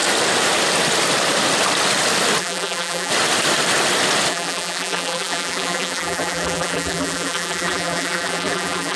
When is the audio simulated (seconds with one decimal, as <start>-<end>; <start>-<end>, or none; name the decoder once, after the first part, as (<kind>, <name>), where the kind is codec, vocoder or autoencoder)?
2.4-3.1 (vocoder, BigVGAN v2); 4.3-9.0